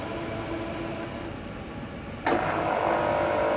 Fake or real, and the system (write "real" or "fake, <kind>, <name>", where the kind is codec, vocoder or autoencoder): real